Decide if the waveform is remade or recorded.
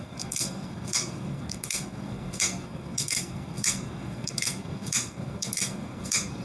remade